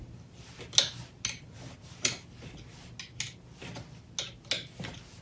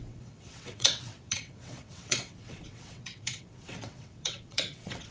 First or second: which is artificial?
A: second